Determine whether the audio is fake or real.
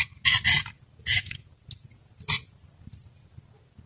real